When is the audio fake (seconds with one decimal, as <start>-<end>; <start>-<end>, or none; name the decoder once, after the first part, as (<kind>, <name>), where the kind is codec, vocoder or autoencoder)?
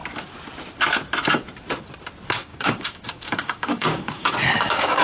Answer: 2.5-5.0 (codec, DAC)